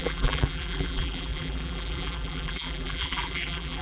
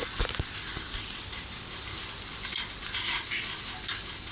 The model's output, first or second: first